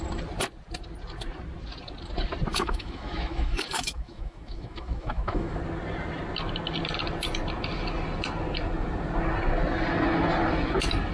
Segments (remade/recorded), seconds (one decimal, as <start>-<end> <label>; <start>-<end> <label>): 0.0-2.5 recorded; 2.5-5.6 remade; 5.6-11.1 recorded